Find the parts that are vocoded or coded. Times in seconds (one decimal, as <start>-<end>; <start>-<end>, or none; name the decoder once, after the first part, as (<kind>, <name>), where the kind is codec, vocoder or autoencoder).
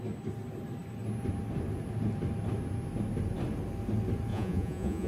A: 4.3-5.1 (vocoder, Vocos)